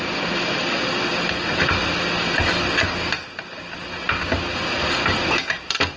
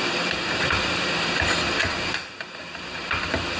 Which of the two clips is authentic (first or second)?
first